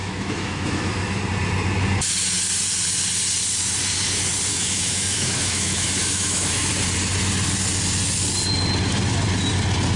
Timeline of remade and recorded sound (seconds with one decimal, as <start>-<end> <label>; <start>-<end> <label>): 0.0-1.2 remade; 1.2-4.5 recorded; 4.5-6.7 remade; 6.7-10.0 recorded